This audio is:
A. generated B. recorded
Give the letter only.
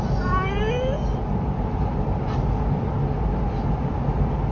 B